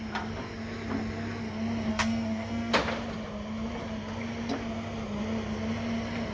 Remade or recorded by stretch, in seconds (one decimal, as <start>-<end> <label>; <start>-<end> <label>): 0.0-1.9 recorded; 1.9-2.7 remade; 2.7-6.3 recorded

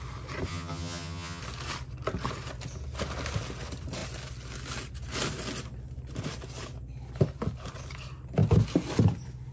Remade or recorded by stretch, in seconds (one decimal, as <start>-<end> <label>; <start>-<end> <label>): 0.0-0.5 recorded; 0.5-1.4 remade; 1.4-9.5 recorded

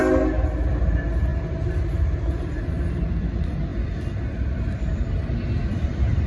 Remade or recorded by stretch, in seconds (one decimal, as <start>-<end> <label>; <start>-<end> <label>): 0.0-6.3 recorded

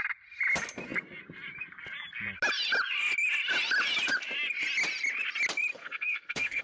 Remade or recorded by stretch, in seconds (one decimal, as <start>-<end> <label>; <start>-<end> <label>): 0.0-5.7 recorded; 5.7-6.6 remade

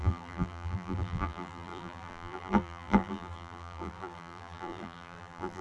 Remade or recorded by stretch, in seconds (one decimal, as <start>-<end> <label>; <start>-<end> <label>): 0.0-5.6 remade

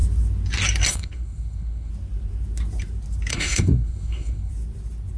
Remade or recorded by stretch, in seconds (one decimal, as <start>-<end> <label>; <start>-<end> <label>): 0.0-0.9 recorded; 0.9-1.9 remade; 1.9-3.3 recorded; 3.3-4.5 remade; 4.5-5.2 recorded